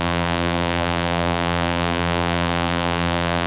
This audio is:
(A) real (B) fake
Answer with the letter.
B